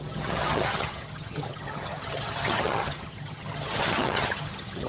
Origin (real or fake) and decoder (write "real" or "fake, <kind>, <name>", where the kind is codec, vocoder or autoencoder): fake, vocoder, HiFi-GAN